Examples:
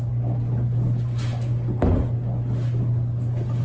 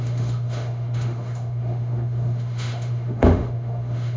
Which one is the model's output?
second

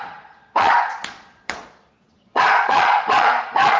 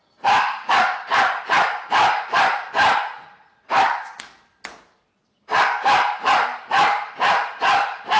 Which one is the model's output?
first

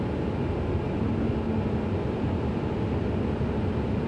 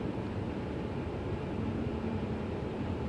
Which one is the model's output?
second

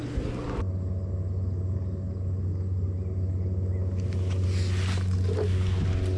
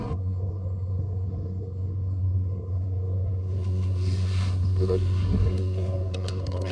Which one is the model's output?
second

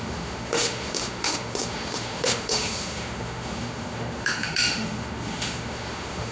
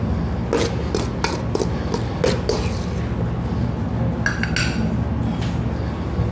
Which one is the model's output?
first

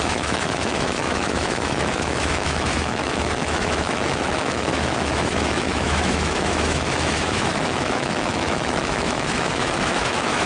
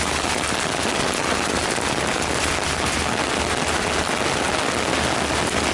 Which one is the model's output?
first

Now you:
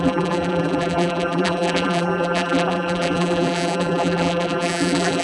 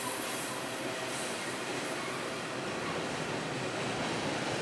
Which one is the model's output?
first